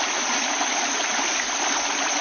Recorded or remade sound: recorded